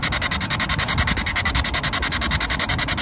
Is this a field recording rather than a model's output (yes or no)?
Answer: yes